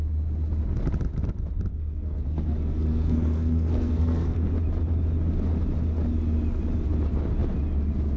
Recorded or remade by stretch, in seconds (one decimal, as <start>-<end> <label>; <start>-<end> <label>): 0.0-1.7 recorded; 1.7-4.5 remade; 4.5-8.2 recorded